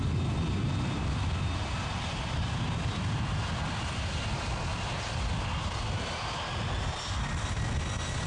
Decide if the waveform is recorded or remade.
recorded